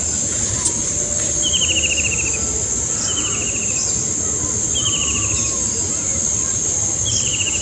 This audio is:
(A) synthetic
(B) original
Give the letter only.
B